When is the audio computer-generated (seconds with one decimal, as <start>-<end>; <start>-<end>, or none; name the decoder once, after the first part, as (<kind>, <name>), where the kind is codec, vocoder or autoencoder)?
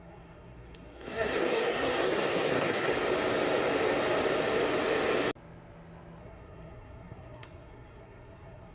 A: 0.0-2.9 (codec, SNAC); 6.2-8.7